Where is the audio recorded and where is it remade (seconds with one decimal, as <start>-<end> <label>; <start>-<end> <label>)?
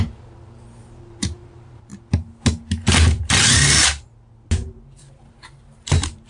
0.0-1.9 remade; 1.9-5.6 recorded; 5.6-6.3 remade